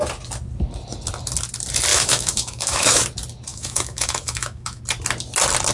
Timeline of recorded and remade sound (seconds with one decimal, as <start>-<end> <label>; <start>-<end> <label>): 0.0-1.9 recorded; 1.9-3.0 remade; 3.0-3.5 recorded; 3.5-4.8 remade; 4.8-5.7 recorded